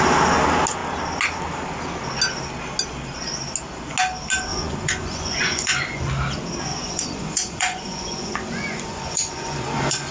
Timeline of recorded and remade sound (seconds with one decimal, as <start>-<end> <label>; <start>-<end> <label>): 0.0-4.5 recorded; 4.5-6.1 remade; 6.1-6.7 recorded; 6.7-10.1 remade